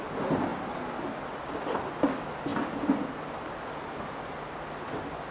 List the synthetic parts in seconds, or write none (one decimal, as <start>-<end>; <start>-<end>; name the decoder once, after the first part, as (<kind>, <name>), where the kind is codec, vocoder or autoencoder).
none